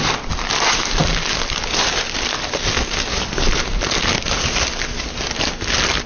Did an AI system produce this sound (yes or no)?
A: no